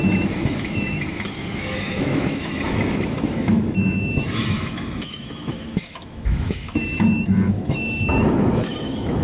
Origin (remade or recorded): remade